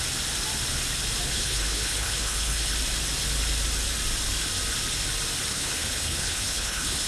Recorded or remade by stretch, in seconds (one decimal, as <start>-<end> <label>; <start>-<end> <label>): 0.0-1.3 recorded; 1.3-2.7 remade; 2.7-5.5 recorded; 5.5-7.1 remade

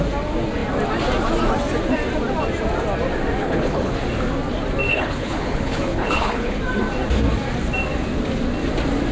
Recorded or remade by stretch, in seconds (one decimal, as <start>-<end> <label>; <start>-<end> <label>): 0.0-3.4 recorded; 3.4-3.9 remade; 3.9-4.9 recorded; 4.9-6.6 remade; 6.6-9.1 recorded

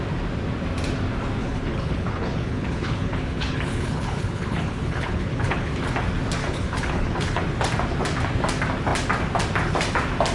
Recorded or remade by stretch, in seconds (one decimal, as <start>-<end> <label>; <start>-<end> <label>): 0.0-1.4 recorded; 1.4-5.7 remade; 5.7-6.4 recorded; 6.4-7.4 remade; 7.4-10.3 recorded

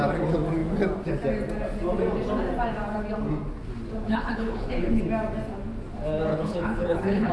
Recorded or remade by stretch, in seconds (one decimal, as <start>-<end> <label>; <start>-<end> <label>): 0.0-4.0 recorded; 4.0-5.0 remade; 5.0-6.3 recorded; 6.3-7.3 remade

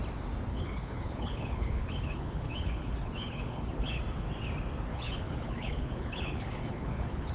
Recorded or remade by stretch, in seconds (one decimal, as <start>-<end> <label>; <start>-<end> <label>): 0.0-0.5 recorded; 0.5-4.0 remade; 4.0-4.9 recorded; 4.9-7.3 remade

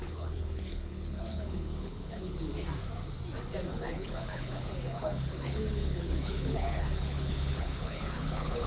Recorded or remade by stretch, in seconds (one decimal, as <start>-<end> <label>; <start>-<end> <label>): 0.0-2.4 remade; 2.4-3.7 recorded; 3.7-8.7 remade

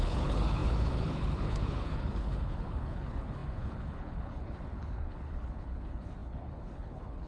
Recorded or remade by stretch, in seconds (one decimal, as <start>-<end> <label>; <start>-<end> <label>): 0.0-7.3 remade